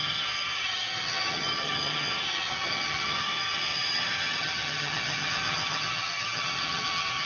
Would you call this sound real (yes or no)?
no